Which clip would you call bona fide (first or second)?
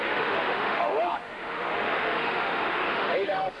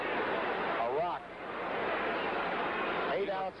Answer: second